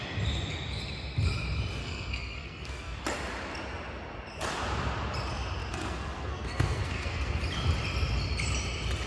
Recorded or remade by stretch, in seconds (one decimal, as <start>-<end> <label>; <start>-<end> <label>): 0.0-1.8 recorded; 1.8-3.0 remade; 3.0-5.6 recorded; 5.6-7.4 remade; 7.4-9.1 recorded